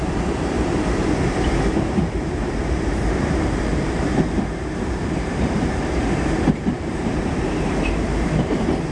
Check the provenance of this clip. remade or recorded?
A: remade